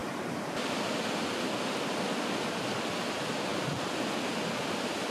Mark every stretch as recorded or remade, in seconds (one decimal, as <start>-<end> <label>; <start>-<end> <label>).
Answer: 0.0-0.8 remade; 0.8-5.1 recorded